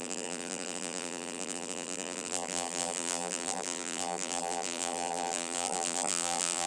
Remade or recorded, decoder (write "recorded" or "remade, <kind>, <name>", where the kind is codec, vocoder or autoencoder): remade, vocoder, BigVGAN v2